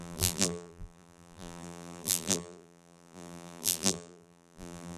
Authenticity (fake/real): fake